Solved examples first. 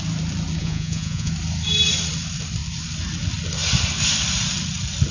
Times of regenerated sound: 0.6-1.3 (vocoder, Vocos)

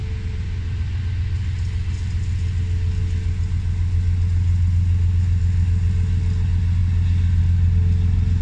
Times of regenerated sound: none

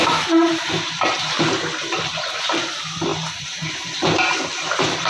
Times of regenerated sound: 0.0-5.1 (vocoder, BigVGAN v2)